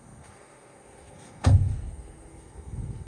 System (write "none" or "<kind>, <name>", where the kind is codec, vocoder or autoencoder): codec, SNAC